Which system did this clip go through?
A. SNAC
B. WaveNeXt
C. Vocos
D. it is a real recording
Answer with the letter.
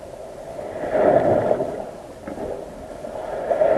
D